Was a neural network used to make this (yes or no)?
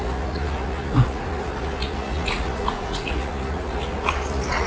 yes